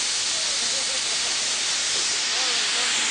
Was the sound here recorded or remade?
recorded